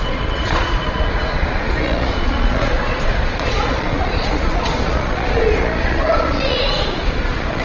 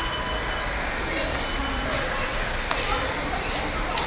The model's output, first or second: first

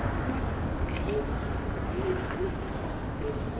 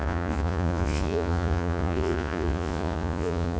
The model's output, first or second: second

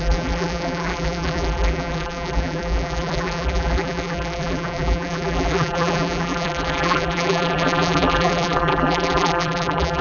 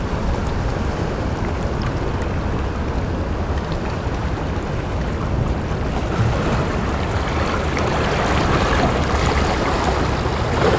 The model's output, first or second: first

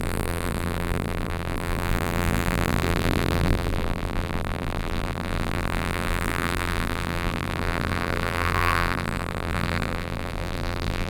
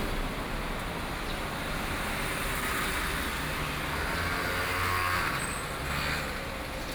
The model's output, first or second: first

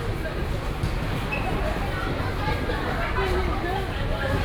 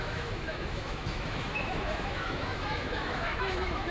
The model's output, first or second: second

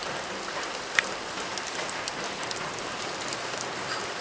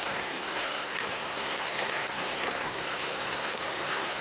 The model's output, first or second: second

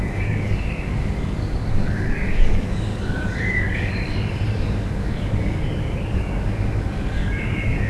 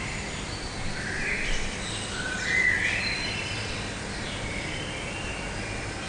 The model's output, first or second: first